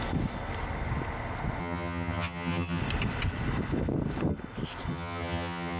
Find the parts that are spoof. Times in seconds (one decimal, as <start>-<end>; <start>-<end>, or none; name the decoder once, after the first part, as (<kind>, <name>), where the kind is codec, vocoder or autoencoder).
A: 1.6-2.8 (vocoder, HiFi-GAN); 4.9-5.8